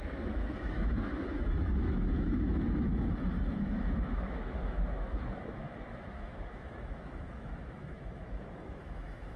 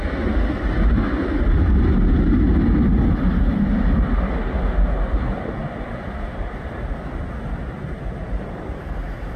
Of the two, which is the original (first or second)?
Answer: second